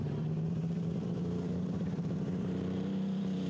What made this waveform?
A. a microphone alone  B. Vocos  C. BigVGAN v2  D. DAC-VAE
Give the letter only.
C